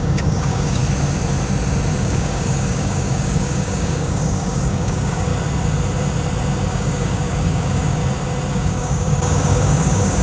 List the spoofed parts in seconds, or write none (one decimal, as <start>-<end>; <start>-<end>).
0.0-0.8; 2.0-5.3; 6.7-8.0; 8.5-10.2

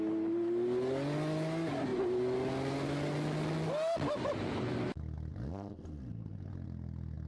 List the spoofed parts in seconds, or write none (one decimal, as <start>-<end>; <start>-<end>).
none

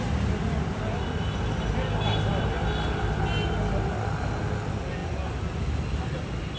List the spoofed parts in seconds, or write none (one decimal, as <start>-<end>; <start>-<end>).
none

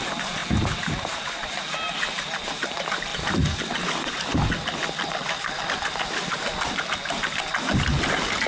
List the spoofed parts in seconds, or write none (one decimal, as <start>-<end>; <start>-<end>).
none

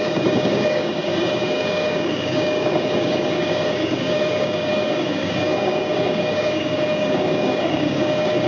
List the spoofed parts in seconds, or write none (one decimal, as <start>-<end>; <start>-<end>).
0.0-8.5

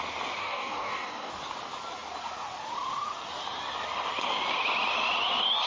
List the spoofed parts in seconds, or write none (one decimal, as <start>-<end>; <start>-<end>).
0.4-1.3